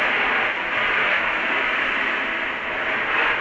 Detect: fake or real real